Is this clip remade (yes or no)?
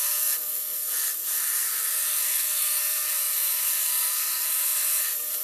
yes